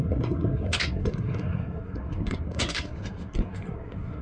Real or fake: fake